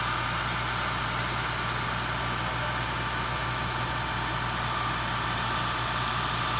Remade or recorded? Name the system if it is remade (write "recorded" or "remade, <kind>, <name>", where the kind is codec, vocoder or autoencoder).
recorded